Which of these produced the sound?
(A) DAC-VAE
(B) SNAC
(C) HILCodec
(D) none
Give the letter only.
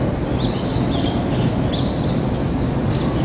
D